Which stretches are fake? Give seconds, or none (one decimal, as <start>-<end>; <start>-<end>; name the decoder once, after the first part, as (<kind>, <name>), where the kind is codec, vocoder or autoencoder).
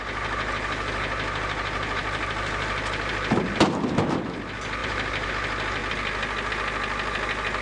4.8-5.3 (vocoder, BigVGAN v2)